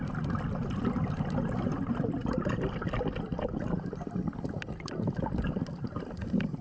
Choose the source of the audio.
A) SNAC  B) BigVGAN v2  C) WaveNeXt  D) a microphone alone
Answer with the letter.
D